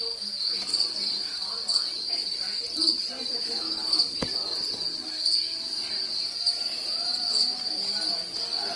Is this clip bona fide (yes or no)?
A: yes